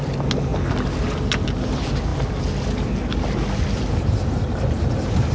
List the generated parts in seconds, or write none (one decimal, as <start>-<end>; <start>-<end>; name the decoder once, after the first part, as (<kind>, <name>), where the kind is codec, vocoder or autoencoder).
none

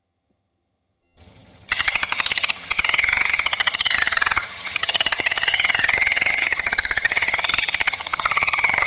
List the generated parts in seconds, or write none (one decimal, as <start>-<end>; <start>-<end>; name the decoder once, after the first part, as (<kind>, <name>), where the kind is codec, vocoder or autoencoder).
0.0-8.9 (vocoder, HiFi-GAN)

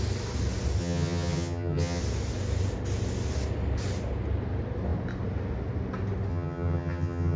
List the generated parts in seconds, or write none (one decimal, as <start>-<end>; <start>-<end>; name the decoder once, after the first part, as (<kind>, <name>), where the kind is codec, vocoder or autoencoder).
0.8-2.0 (vocoder, HiFi-GAN); 6.3-7.4

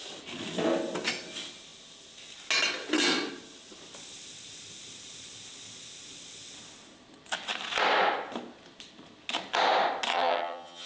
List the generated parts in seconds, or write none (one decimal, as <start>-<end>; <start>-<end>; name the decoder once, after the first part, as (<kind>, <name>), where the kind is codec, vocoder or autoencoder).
10.1-10.9 (vocoder, HiFi-GAN)

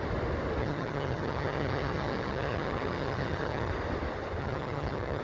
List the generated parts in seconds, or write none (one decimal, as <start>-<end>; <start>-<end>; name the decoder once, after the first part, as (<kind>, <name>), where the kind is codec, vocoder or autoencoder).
0.6-3.7 (vocoder, HiFi-GAN); 4.4-5.2

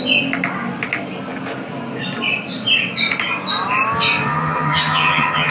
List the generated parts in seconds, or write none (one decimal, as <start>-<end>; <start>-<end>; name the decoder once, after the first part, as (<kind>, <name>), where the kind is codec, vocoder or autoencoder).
4.3-5.5 (vocoder, HiFi-GAN)